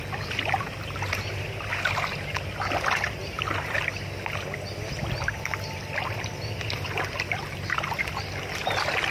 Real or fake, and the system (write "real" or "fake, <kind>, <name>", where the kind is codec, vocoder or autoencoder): real